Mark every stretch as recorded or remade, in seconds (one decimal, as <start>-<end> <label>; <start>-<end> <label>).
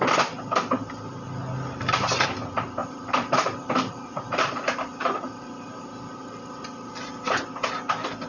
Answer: 0.0-2.8 recorded; 2.8-7.5 remade; 7.5-8.3 recorded